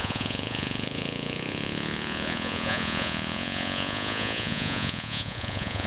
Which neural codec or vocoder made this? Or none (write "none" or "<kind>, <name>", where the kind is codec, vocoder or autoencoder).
vocoder, Vocos